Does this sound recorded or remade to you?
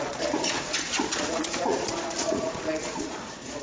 remade